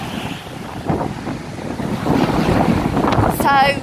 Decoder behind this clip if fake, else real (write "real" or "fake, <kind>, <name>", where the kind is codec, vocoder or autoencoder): real